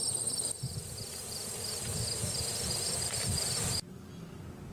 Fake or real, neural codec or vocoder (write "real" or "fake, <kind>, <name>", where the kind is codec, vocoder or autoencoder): real